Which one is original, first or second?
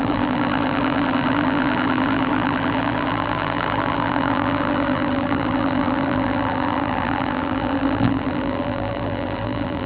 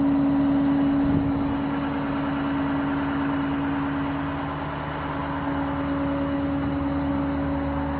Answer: second